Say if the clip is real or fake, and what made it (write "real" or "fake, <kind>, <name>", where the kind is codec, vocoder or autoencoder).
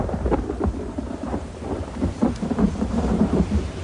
fake, vocoder, BigVGAN v2